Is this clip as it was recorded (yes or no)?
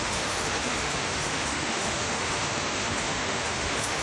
no